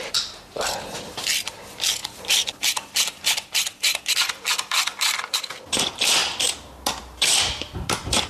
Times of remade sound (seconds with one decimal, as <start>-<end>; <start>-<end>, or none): 0.0-6.2; 7.0-8.3